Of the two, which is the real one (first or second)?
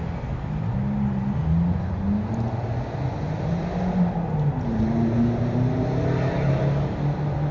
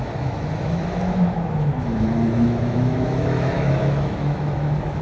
first